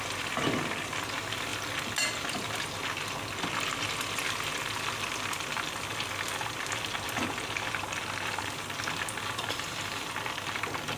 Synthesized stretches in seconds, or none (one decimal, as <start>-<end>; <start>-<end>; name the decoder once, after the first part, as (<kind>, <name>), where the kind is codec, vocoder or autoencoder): none